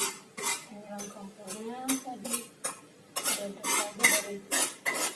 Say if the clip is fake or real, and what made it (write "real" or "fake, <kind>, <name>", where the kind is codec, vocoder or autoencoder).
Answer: real